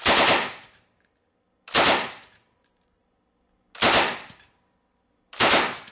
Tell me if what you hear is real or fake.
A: real